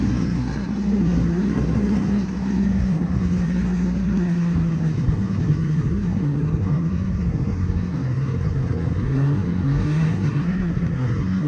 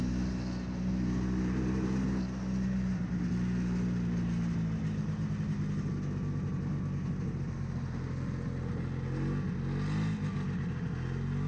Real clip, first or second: second